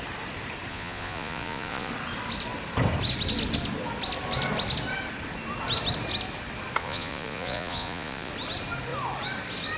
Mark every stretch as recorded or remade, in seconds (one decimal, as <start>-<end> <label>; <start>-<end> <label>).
0.0-0.7 recorded; 0.7-1.9 remade; 1.9-6.8 recorded; 6.8-8.3 remade; 8.3-9.8 recorded